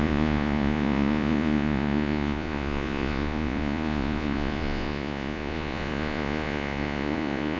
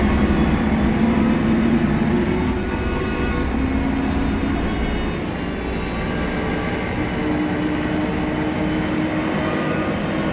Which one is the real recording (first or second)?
second